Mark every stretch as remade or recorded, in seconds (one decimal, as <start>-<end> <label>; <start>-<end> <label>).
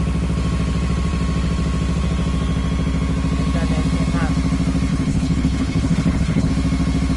0.0-4.9 recorded; 4.9-6.5 remade; 6.5-7.2 recorded